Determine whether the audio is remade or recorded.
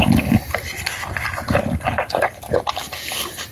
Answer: recorded